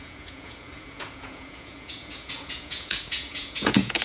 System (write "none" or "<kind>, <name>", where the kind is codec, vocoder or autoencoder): vocoder, Vocos